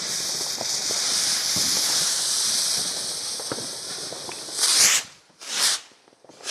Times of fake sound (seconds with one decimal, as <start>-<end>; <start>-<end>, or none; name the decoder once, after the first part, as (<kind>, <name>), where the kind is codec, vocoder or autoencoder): 0.0-6.5 (vocoder, BigVGAN v2)